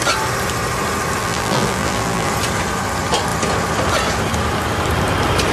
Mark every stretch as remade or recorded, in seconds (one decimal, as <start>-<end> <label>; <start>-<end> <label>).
0.0-1.2 recorded; 1.2-2.3 remade; 2.3-5.5 recorded